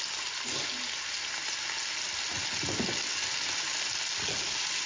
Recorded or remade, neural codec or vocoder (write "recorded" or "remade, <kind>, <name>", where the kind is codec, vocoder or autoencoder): recorded